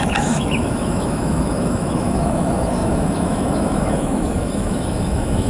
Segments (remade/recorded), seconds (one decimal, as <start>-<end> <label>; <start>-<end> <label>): 0.0-5.5 remade